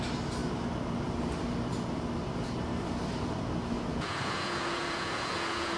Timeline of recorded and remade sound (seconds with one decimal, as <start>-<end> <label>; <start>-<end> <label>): 0.0-3.9 recorded; 3.9-5.8 remade

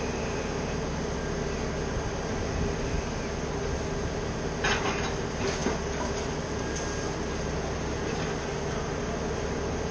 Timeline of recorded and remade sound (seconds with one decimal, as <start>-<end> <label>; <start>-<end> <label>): 0.0-9.9 recorded

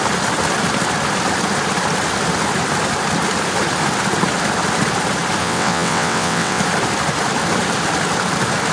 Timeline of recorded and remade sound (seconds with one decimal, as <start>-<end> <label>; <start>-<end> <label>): 0.0-5.4 recorded; 5.4-6.6 remade; 6.6-8.7 recorded